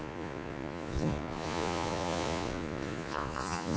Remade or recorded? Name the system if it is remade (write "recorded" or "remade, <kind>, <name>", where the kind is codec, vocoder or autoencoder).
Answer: remade, vocoder, Vocos